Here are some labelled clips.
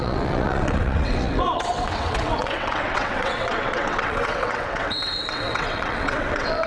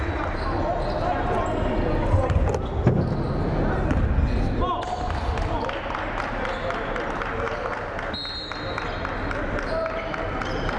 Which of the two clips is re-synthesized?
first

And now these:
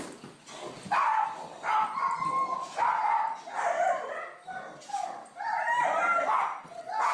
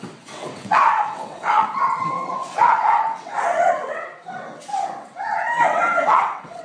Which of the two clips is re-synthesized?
second